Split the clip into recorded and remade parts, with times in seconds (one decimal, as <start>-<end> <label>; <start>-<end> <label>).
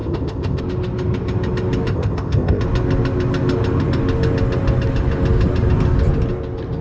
0.0-0.6 remade; 0.6-1.9 recorded; 1.9-2.6 remade; 2.6-6.8 recorded